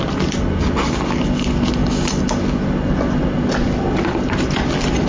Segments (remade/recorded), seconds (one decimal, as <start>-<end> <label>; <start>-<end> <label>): 0.0-5.1 recorded